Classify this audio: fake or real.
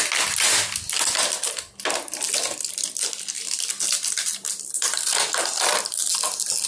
real